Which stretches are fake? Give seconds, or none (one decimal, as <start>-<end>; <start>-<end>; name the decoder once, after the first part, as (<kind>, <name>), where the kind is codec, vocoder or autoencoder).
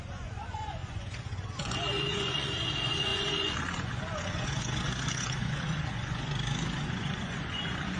0.0-8.0 (vocoder, Vocos)